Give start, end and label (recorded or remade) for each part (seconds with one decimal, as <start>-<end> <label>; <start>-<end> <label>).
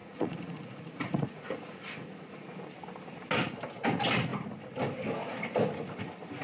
0.0-2.5 remade; 2.5-6.4 recorded